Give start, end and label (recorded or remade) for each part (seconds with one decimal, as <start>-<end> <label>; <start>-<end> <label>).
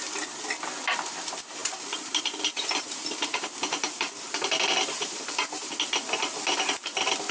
0.0-1.6 recorded; 1.6-5.7 remade; 5.7-7.3 recorded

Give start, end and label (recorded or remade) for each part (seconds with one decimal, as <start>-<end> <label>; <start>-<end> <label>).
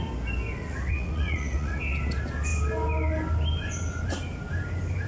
0.0-0.6 recorded; 0.6-1.8 remade; 1.8-5.1 recorded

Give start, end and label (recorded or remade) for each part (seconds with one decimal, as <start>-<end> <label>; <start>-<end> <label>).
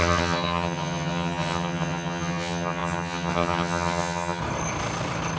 0.0-4.4 remade; 4.4-5.4 recorded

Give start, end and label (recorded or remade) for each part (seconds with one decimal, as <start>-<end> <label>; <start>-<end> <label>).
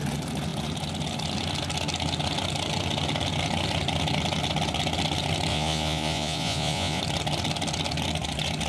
0.0-5.5 recorded; 5.5-7.0 remade; 7.0-8.7 recorded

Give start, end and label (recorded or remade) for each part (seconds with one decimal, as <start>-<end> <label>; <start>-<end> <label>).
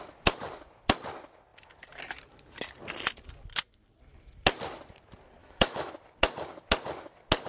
0.0-5.4 recorded; 5.4-5.9 remade; 5.9-7.5 recorded